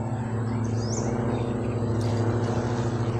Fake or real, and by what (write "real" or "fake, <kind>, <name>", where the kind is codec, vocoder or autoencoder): real